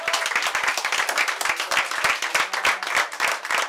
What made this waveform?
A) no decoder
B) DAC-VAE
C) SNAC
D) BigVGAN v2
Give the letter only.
A